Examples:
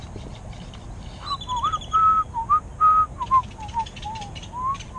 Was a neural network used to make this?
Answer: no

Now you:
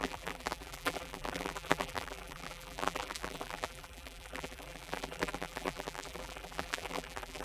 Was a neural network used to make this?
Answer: yes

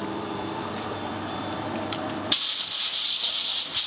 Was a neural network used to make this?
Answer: yes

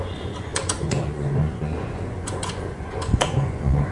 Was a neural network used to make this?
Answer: yes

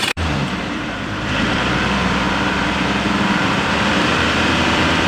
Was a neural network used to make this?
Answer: yes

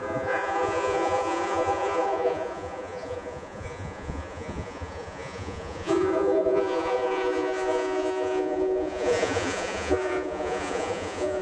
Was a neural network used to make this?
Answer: yes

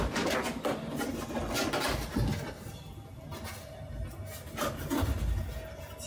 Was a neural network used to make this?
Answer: no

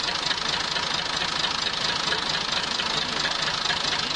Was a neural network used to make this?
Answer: no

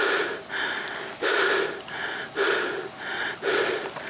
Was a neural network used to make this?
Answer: no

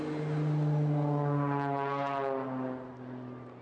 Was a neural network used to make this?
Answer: no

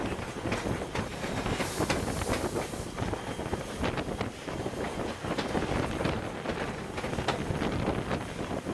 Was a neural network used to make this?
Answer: no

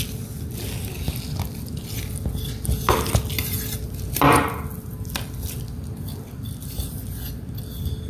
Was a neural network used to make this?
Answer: no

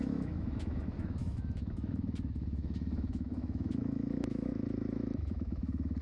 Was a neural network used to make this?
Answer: yes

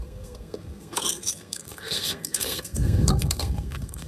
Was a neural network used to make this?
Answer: yes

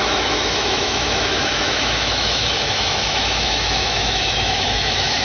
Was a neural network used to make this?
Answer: yes